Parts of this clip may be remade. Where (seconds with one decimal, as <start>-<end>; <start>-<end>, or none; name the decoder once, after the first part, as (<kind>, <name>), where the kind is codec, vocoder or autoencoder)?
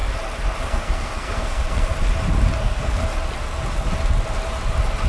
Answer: 0.6-1.9 (codec, SNAC); 2.6-3.0